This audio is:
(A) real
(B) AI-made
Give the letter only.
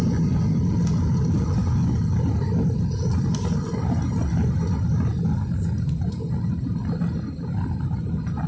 A